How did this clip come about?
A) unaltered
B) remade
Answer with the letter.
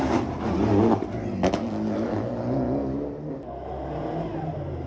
A